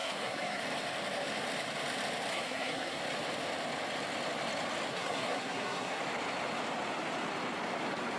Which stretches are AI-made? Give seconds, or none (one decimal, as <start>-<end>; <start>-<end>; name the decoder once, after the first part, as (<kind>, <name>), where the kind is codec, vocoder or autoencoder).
0.0-0.6 (codec, SNAC); 2.3-3.0; 4.9-6.0